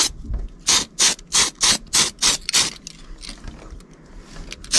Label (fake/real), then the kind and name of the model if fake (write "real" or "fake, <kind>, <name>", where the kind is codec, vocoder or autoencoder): real